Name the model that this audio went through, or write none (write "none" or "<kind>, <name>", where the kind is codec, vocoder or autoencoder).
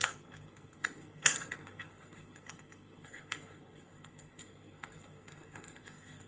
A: codec, SNAC